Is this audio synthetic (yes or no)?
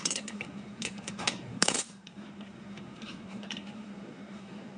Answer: yes